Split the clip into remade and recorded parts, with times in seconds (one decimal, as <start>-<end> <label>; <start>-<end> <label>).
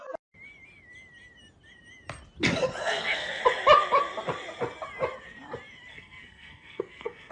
0.0-2.8 recorded; 2.8-3.4 remade; 3.4-5.9 recorded; 5.9-7.3 remade